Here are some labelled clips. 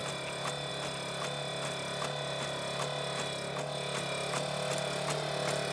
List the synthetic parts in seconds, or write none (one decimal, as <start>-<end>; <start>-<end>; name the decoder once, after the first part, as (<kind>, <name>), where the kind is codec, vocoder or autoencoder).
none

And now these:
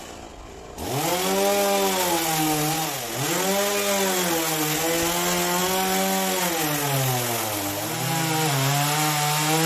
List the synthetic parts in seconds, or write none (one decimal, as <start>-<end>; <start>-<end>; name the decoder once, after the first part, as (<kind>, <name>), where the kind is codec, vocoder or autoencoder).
none

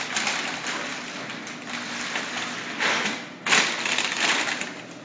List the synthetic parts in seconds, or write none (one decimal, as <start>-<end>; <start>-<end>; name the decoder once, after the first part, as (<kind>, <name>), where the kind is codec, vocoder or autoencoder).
none

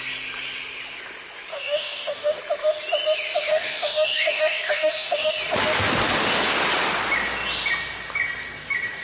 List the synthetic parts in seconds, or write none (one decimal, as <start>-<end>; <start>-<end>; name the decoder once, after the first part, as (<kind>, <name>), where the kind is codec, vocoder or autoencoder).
1.5-2.4 (codec, DAC); 3.5-5.3

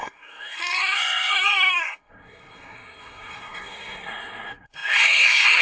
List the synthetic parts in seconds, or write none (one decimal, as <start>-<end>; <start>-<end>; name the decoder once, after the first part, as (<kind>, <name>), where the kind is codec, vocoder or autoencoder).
0.0-5.6 (codec, SNAC)

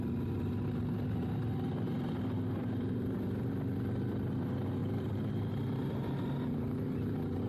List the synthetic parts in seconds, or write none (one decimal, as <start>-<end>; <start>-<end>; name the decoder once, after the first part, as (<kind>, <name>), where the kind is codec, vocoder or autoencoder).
4.8-7.5 (vocoder, BigVGAN v2)